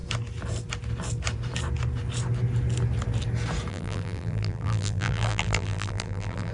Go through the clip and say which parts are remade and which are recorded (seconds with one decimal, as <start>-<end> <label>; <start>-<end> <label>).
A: 0.0-3.7 recorded; 3.7-6.5 remade